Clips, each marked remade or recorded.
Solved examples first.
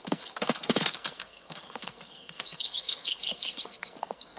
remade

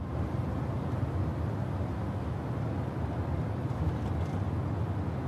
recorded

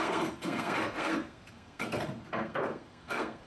remade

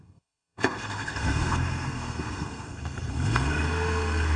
remade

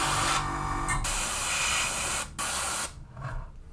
recorded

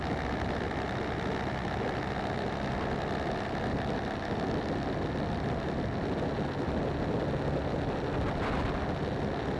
recorded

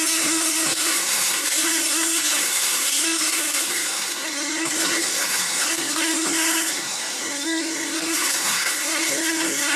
remade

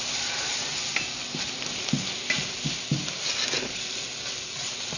recorded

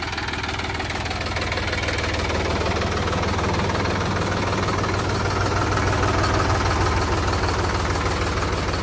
recorded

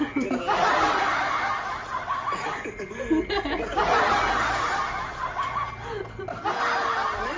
recorded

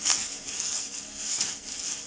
remade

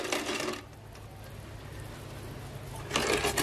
recorded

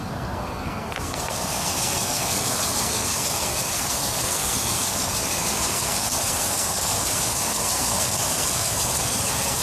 remade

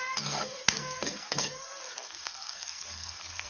remade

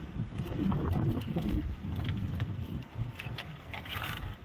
remade